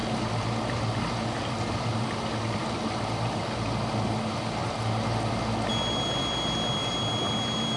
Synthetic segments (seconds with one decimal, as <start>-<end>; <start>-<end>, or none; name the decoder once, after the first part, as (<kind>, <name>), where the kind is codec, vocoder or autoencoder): none

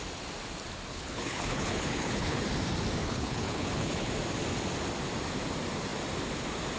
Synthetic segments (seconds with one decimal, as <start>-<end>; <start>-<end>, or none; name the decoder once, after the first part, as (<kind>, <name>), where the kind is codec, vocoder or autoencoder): 0.9-2.4 (codec, HILCodec); 3.0-4.1

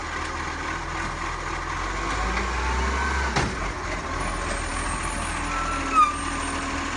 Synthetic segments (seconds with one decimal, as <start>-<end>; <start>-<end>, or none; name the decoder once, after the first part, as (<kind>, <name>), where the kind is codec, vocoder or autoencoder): none

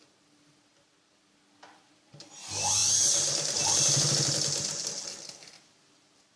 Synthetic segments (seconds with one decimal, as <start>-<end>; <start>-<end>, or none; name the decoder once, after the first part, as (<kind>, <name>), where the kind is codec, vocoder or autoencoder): none